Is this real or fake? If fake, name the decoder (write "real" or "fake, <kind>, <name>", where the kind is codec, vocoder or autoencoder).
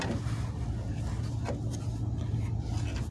real